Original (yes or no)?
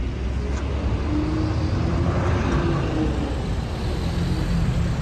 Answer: yes